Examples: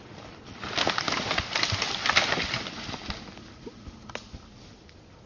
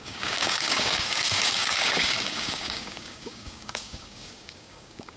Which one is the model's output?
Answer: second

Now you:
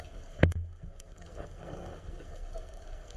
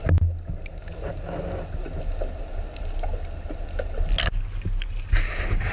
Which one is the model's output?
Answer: first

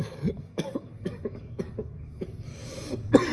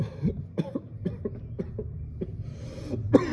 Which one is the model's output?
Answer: first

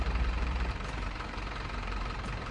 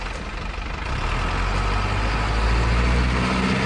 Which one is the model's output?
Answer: first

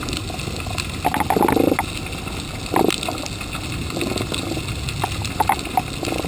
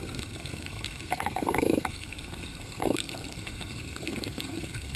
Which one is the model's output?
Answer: second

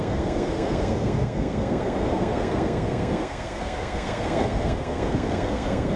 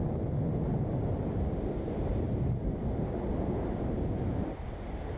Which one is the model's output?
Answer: first